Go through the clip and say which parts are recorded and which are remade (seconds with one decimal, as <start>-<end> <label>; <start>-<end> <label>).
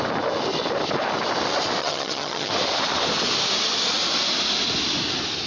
0.0-1.8 recorded; 1.8-2.5 remade; 2.5-5.5 recorded